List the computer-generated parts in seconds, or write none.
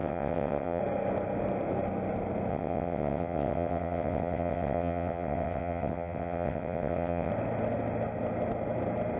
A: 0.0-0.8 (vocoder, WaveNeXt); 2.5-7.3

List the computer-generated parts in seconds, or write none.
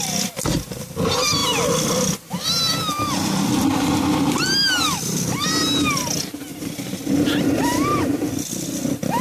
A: 6.5-7.0 (vocoder, BigVGAN v2)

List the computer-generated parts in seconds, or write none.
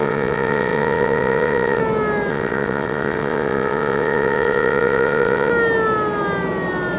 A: 0.0-1.8 (vocoder, WaveNeXt); 2.3-5.5